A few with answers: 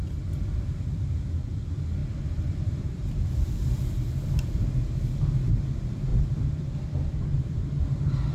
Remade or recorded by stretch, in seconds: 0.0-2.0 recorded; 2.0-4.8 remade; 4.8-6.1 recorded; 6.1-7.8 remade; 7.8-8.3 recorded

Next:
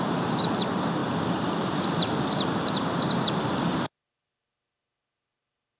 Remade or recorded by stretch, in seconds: 0.0-1.0 recorded; 1.0-4.3 remade; 4.3-5.8 recorded

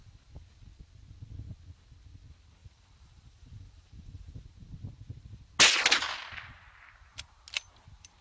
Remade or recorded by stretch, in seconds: 0.0-2.6 recorded; 2.6-4.5 remade; 4.5-8.2 recorded

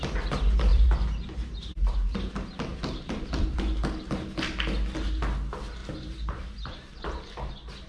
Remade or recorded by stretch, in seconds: 0.0-0.7 recorded; 0.7-2.3 remade; 2.3-5.8 recorded; 5.8-7.5 remade; 7.5-7.9 recorded

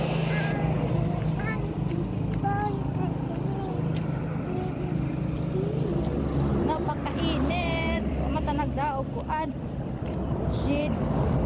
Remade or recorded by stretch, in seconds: 0.0-6.5 recorded; 6.5-10.9 remade; 10.9-11.5 recorded

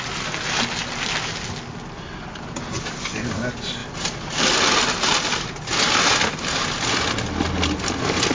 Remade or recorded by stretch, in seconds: 0.0-3.8 recorded; 3.8-4.5 remade; 4.5-8.3 recorded

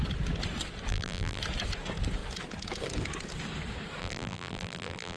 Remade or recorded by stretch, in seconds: 0.0-0.9 recorded; 0.9-1.4 remade; 1.4-4.0 recorded; 4.0-5.2 remade